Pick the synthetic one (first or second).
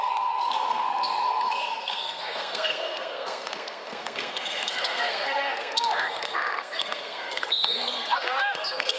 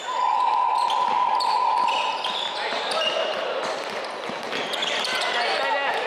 first